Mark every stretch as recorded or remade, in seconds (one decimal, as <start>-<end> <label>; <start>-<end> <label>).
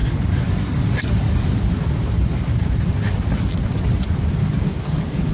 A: 0.0-2.7 remade; 2.7-4.4 recorded; 4.4-5.3 remade